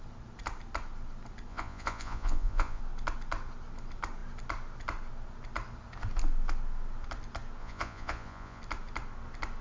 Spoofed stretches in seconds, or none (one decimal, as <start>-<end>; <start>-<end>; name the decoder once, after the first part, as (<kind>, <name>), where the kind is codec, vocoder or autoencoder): 1.5-2.8 (vocoder, Vocos); 7.6-8.6